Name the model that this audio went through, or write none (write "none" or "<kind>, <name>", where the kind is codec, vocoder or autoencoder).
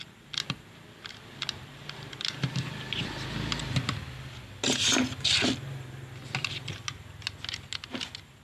none